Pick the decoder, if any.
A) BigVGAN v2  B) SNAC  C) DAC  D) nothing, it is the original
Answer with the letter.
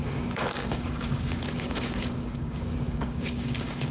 C